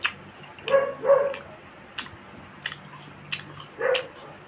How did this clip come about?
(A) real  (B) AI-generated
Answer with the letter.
A